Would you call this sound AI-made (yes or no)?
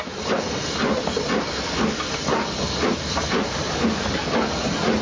no